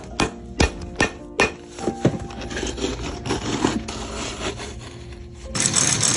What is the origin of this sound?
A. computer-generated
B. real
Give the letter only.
B